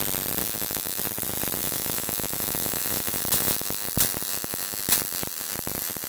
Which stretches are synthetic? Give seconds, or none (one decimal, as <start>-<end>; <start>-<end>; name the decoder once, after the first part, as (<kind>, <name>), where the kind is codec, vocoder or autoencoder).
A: 0.4-1.0 (autoencoder, DAC-VAE); 1.6-3.9; 4.3-4.8

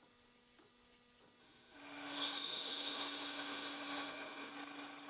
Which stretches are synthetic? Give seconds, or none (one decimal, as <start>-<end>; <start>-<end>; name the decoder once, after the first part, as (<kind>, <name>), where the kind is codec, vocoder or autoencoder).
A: 1.4-4.5 (autoencoder, DAC-VAE)

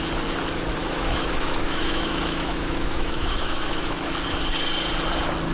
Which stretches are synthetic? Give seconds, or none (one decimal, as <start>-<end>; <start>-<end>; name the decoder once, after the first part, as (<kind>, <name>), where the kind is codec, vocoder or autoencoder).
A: 0.8-4.1 (autoencoder, DAC-VAE)

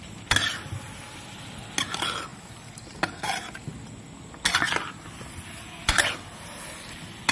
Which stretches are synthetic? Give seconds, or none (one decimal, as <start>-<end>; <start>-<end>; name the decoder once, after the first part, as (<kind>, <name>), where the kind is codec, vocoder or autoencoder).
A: none

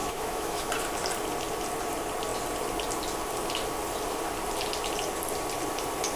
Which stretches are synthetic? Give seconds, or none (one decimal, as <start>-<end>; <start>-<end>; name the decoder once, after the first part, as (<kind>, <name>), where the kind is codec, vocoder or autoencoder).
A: 0.0-0.7 (autoencoder, DAC-VAE)

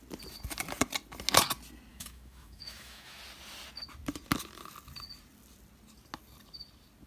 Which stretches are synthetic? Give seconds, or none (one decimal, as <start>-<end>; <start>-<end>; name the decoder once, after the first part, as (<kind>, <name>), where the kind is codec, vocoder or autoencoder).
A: 1.9-3.2 (autoencoder, DAC-VAE)

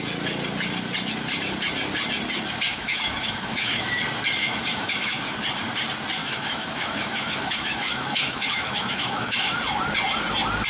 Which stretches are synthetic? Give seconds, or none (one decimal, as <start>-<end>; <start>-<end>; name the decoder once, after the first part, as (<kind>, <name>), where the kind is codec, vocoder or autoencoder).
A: 2.7-4.0 (autoencoder, DAC-VAE); 4.4-5.2; 6.2-9.6

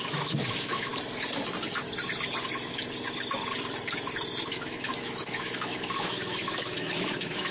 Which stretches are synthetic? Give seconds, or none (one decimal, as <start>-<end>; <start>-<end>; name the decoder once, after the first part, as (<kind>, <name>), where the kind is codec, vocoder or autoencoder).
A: 0.0-0.9 (autoencoder, DAC-VAE); 4.5-7.5